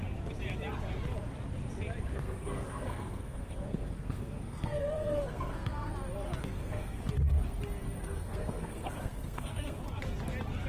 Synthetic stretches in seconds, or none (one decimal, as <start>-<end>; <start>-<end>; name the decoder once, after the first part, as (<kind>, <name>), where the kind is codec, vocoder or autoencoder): 2.1-5.9 (codec, SNAC); 6.4-7.0; 8.0-9.8